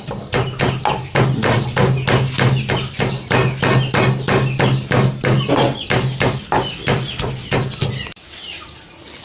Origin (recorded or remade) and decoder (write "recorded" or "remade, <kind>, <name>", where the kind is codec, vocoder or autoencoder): recorded